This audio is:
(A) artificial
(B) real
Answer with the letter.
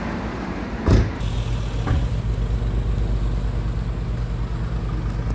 B